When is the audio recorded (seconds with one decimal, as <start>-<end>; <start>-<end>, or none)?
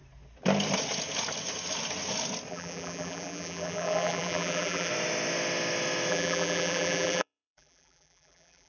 0.0-2.5; 4.9-6.1